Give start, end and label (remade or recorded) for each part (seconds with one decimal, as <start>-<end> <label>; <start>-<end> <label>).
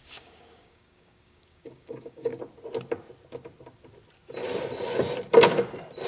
0.0-2.3 remade; 2.3-6.1 recorded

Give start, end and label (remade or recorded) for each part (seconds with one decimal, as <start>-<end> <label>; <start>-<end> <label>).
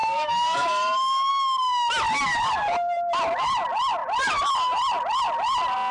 0.0-1.3 remade; 1.3-5.9 recorded